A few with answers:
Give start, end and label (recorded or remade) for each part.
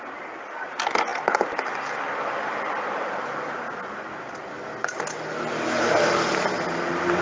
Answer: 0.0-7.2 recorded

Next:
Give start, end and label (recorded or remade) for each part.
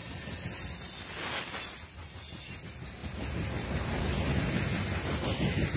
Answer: 0.0-5.8 recorded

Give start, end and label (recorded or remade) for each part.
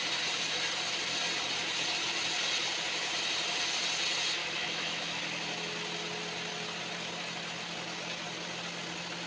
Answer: 0.0-4.4 recorded; 4.4-5.2 remade; 5.2-9.3 recorded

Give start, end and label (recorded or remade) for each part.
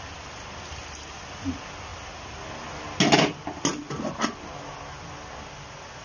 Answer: 0.0-6.0 recorded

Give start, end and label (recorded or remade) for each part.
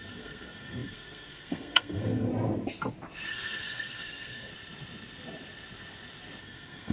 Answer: 0.0-2.3 remade; 2.3-3.3 recorded; 3.3-4.5 remade; 4.5-6.4 recorded; 6.4-6.9 remade